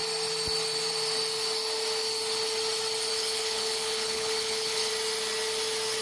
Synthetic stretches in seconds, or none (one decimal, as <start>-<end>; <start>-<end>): 3.1-4.9

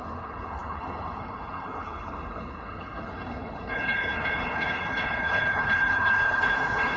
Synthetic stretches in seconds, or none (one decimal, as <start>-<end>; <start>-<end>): 0.0-7.0